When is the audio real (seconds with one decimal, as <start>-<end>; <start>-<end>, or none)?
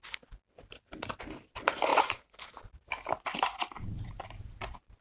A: 0.0-1.9